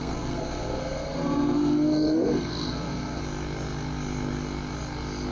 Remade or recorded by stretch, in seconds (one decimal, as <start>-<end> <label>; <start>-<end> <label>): 0.0-3.2 remade; 3.2-5.3 recorded